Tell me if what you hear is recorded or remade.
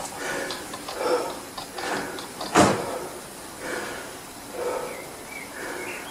recorded